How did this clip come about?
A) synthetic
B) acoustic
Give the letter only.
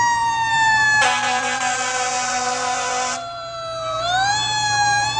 A